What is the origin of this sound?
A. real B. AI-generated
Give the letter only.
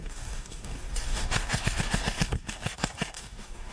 B